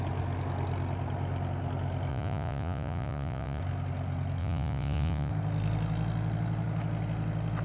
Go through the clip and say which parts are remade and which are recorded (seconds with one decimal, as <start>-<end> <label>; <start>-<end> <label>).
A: 0.0-2.1 recorded; 2.1-3.6 remade; 3.6-4.4 recorded; 4.4-5.3 remade; 5.3-7.6 recorded